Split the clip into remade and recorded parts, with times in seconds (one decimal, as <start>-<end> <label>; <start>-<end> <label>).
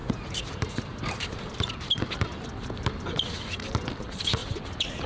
0.0-1.7 remade; 1.7-4.4 recorded; 4.4-5.1 remade